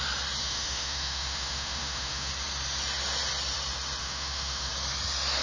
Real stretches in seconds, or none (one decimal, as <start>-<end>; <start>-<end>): 0.0-0.4; 2.3-4.0; 4.7-5.4